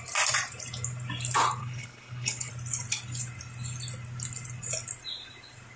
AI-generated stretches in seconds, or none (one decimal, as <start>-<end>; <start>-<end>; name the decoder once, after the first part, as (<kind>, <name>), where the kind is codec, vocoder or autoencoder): 1.6-2.5 (codec, HILCodec)